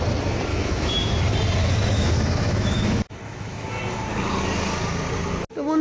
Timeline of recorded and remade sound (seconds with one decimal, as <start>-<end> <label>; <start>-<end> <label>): 0.0-0.5 recorded; 0.5-1.2 remade; 1.2-1.6 recorded; 1.6-3.8 remade; 3.8-5.8 recorded

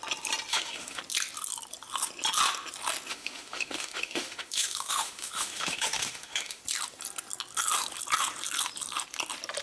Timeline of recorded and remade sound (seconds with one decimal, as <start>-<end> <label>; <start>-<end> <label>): 0.0-0.5 recorded; 0.5-1.0 remade; 1.0-3.1 recorded; 3.1-6.6 remade; 6.6-9.6 recorded

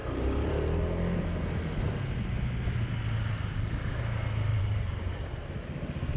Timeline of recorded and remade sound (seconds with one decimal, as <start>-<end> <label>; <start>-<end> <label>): 0.0-4.5 recorded; 4.5-5.3 remade; 5.3-6.2 recorded